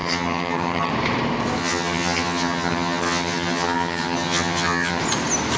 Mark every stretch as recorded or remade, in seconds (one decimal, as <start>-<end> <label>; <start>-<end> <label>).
0.0-0.9 remade; 0.9-1.6 recorded; 1.6-5.0 remade; 5.0-5.6 recorded